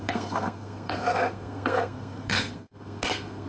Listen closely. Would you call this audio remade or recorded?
remade